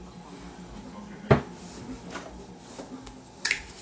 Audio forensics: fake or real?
real